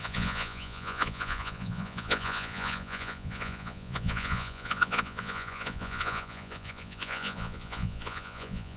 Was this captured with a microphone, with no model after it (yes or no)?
no